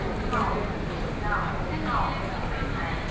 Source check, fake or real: real